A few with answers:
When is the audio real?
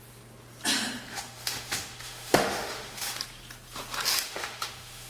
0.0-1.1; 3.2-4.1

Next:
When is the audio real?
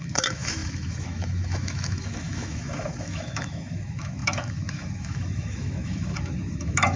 none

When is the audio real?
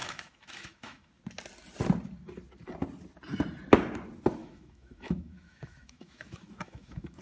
1.1-4.4